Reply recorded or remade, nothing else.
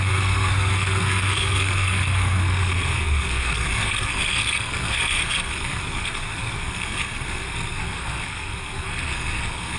remade